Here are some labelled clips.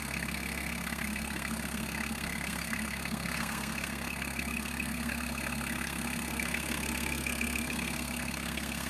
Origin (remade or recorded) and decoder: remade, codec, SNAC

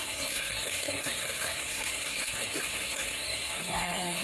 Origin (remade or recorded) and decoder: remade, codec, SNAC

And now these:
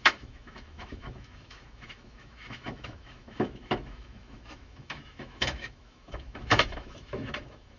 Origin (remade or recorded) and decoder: remade, autoencoder, DAC-VAE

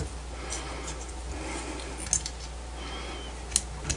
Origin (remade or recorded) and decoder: recorded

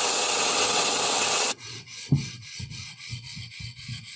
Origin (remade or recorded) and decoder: remade, vocoder, WaveNeXt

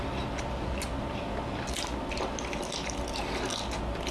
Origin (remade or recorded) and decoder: recorded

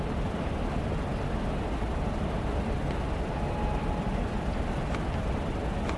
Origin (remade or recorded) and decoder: recorded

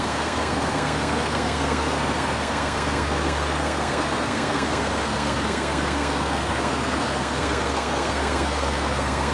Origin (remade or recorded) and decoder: remade, codec, SNAC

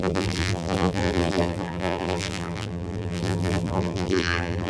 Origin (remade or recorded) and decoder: remade, vocoder, BigVGAN v2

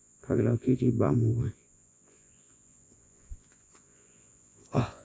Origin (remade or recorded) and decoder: remade, vocoder, Vocos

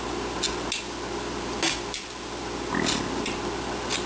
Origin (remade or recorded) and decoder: recorded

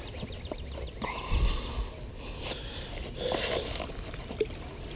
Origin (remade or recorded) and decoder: recorded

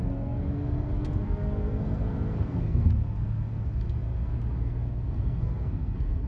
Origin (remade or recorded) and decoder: remade, codec, SNAC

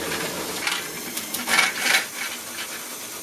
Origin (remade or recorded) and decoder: recorded